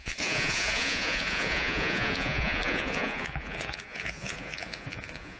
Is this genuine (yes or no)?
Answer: no